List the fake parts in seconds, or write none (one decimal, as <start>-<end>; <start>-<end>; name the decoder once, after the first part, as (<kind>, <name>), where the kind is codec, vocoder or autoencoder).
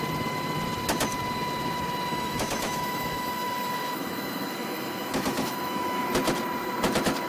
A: 2.1-6.1 (autoencoder, DAC-VAE)